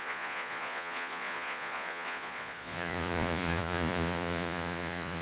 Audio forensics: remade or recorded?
remade